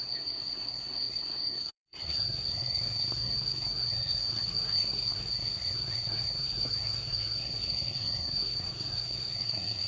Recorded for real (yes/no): no